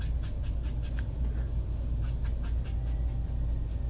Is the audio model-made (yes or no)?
no